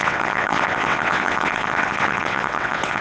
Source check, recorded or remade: remade